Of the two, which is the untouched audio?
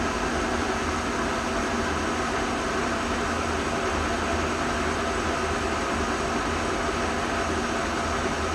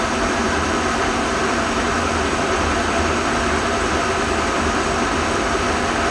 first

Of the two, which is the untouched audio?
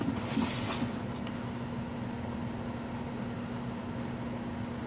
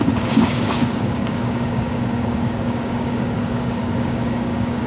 first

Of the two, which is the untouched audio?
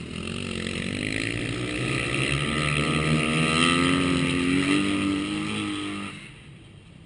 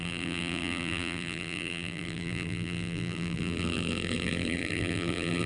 first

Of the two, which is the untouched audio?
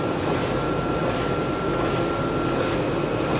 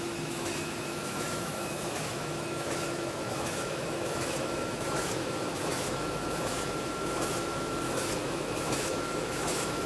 first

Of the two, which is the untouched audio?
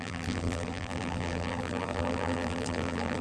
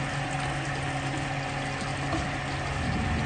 second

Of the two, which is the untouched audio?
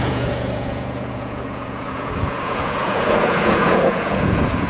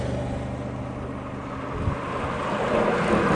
second